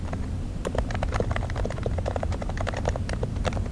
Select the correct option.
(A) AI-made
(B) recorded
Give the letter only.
B